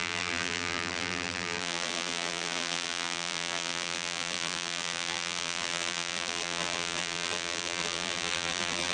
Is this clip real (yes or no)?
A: no